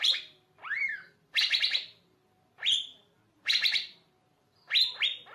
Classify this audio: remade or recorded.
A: remade